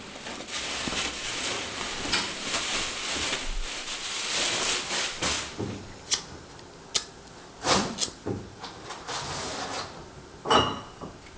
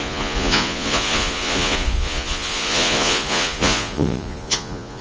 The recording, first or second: first